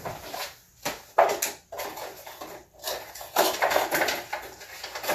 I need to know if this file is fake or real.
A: real